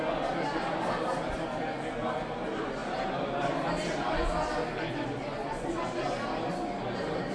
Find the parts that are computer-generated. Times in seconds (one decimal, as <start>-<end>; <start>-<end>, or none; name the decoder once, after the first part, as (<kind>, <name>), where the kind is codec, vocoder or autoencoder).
none